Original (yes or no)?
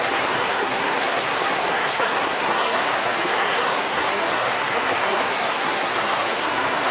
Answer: no